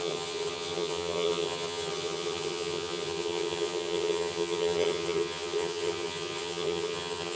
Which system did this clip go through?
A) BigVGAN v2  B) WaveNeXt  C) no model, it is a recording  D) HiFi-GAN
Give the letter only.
D